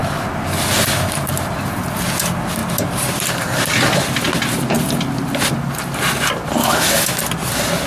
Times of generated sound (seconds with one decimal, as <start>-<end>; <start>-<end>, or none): 6.6-7.2